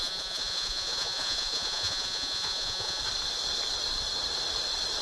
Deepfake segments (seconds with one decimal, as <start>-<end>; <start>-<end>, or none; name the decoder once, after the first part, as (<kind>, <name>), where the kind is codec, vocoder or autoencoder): 0.0-3.0 (vocoder, Vocos)